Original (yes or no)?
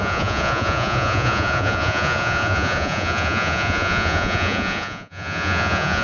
no